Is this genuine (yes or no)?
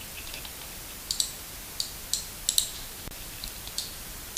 yes